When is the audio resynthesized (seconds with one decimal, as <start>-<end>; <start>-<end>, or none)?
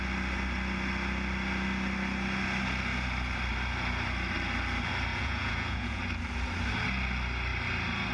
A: 5.1-6.0